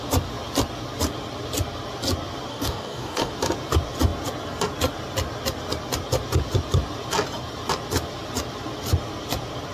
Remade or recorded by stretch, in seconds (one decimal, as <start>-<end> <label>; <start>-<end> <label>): 0.0-2.5 recorded; 2.5-3.3 remade; 3.3-9.7 recorded